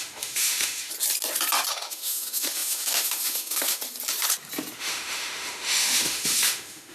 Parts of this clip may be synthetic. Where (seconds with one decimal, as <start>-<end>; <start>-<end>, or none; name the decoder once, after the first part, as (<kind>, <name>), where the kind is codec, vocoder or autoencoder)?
0.0-0.9 (autoencoder, DAC-VAE); 1.7-3.8; 4.8-6.9